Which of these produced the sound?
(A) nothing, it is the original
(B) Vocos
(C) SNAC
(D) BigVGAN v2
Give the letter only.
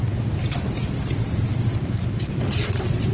A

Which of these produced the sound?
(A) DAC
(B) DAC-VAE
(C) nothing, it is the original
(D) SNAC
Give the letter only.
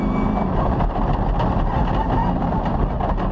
C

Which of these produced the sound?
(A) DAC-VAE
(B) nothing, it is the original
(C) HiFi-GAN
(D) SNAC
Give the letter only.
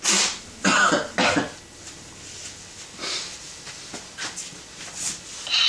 B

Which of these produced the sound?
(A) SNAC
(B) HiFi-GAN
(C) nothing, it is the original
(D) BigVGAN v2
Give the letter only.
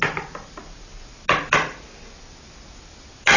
C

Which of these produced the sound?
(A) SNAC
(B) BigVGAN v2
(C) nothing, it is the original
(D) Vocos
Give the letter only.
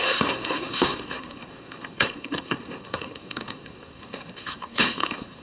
A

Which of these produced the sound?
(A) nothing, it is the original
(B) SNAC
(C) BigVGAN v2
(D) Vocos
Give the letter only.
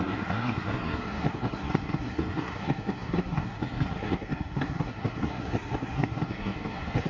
B